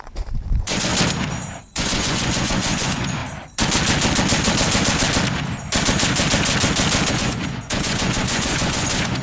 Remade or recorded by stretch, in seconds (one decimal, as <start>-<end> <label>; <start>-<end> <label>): 0.0-0.9 remade; 0.9-1.6 recorded; 1.6-3.2 remade; 3.2-7.1 recorded; 7.1-9.2 remade